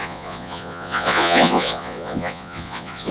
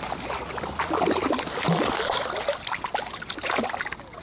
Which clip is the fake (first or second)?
first